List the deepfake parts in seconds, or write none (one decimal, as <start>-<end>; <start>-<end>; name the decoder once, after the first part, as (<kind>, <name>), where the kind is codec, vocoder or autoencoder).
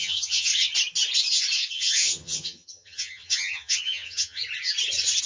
0.0-0.5 (vocoder, HiFi-GAN); 1.7-4.4